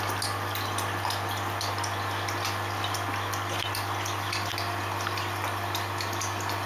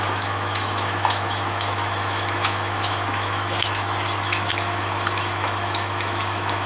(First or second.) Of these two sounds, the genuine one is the first